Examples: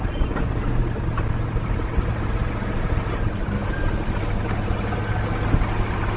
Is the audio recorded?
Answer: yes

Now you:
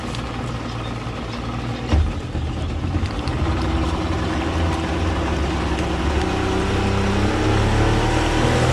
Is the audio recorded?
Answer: yes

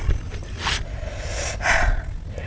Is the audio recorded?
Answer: yes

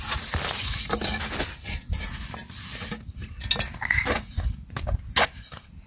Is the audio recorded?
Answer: yes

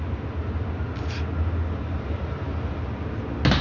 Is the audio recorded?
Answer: yes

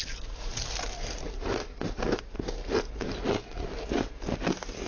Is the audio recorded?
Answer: yes